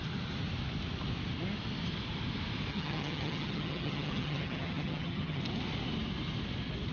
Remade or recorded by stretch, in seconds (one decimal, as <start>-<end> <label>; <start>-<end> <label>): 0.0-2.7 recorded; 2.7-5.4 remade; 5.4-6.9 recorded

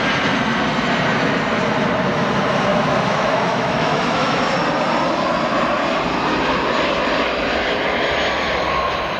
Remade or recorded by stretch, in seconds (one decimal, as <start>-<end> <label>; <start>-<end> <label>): 0.0-2.7 recorded; 2.7-4.4 remade; 4.4-9.2 recorded

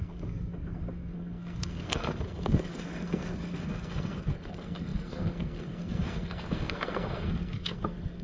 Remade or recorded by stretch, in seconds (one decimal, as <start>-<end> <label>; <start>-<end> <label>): 0.0-8.2 remade

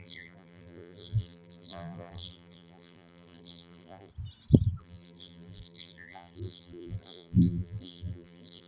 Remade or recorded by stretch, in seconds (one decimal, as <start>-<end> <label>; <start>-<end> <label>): 0.0-4.1 remade; 4.1-4.8 recorded; 4.8-8.7 remade